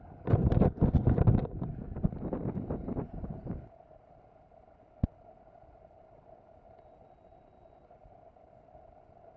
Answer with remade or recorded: recorded